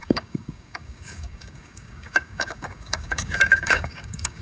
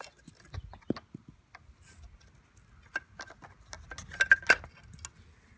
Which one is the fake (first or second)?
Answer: first